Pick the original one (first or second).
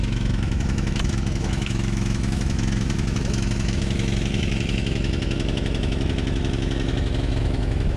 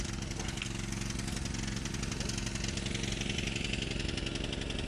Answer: second